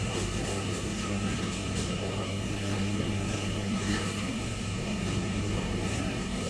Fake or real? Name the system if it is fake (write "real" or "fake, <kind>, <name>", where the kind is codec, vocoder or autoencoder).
fake, codec, SNAC